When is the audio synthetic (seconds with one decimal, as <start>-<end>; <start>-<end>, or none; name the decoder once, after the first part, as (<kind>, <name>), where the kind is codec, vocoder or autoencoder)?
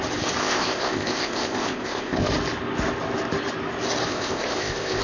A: 0.4-2.3 (codec, ZipCodec); 4.1-5.0